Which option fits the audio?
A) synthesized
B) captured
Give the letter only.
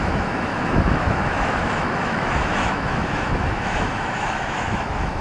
A